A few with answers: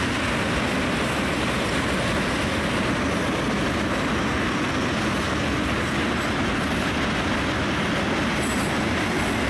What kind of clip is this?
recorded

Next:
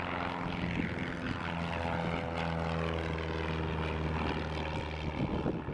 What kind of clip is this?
recorded